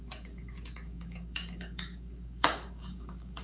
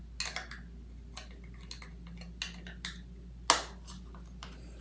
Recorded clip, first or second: second